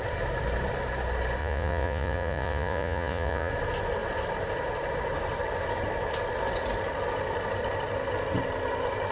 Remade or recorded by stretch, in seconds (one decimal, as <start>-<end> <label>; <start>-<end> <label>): 0.0-1.4 recorded; 1.4-3.5 remade; 3.5-9.1 recorded